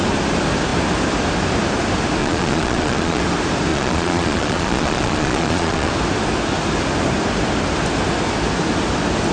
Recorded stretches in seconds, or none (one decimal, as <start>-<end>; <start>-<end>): 0.0-2.2; 3.2-3.7; 5.9-9.3